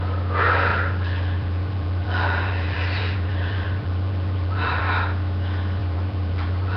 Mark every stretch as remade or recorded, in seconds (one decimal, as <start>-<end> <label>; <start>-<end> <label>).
0.0-0.7 recorded; 0.7-4.8 remade; 4.8-5.8 recorded; 5.8-6.8 remade